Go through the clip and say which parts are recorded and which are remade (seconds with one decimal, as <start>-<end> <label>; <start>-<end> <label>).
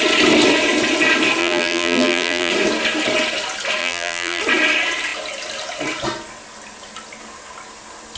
0.0-1.4 recorded; 1.4-2.5 remade; 2.5-3.8 recorded; 3.8-4.4 remade; 4.4-8.2 recorded